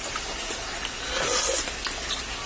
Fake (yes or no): no